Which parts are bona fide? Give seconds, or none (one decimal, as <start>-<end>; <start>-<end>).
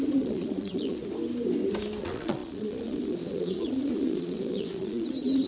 1.0-2.0